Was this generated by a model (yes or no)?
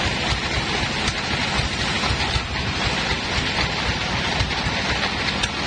no